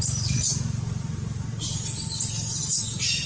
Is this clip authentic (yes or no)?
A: yes